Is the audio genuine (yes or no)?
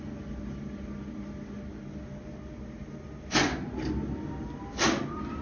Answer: yes